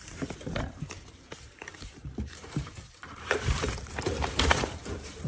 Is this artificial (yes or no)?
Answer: yes